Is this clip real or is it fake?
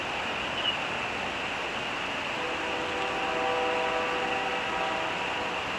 real